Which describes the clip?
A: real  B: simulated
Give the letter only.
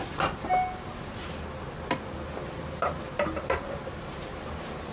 A